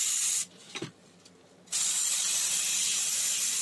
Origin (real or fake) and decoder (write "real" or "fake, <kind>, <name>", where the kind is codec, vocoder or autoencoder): real